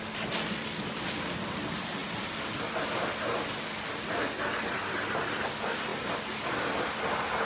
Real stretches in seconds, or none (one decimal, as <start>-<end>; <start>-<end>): 0.0-7.5